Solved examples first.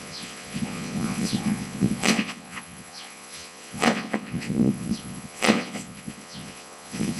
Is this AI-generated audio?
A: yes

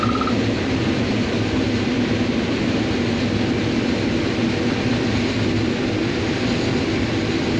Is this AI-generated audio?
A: no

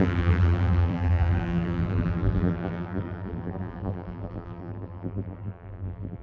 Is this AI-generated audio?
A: yes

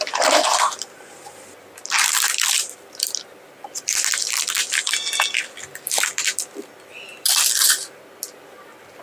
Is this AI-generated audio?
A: no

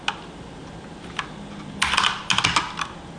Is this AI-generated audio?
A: no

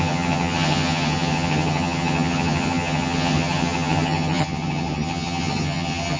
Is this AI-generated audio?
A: yes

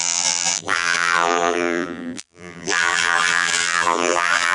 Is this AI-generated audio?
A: yes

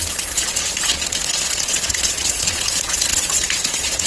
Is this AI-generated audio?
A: yes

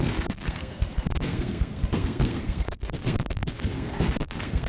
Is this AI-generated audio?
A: yes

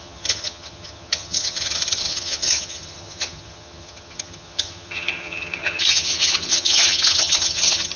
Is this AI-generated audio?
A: yes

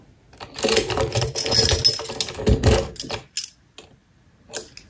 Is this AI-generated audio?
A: no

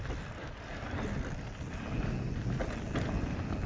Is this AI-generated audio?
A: no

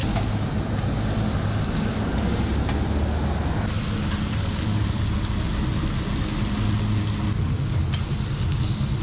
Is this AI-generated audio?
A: no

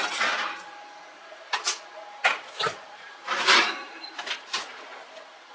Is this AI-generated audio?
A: no